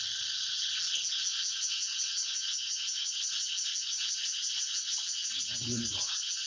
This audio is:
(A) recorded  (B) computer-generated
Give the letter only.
A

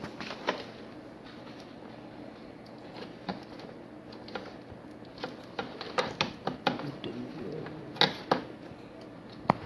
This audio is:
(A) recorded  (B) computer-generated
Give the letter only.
A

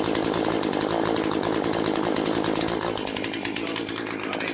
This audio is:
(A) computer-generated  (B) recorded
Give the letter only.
B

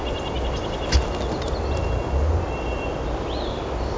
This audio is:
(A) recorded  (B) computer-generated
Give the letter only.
A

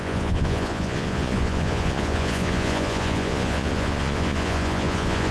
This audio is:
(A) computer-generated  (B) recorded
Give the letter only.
A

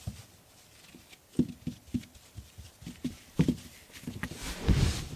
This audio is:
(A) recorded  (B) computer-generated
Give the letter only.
A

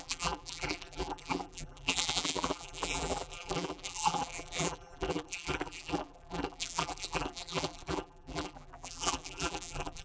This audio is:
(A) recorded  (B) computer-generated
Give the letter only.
B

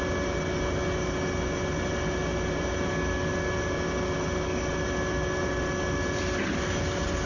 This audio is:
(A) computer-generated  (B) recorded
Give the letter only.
B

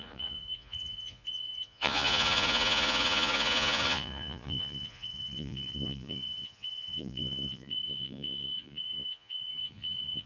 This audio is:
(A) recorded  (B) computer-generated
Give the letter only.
B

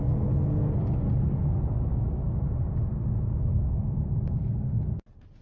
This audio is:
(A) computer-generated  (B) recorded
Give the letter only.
B